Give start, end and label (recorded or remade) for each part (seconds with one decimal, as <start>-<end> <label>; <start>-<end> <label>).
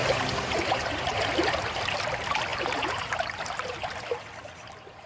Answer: 0.0-5.1 recorded